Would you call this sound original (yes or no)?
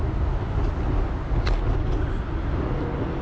yes